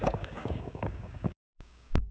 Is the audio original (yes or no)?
no